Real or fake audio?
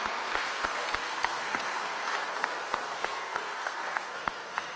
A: fake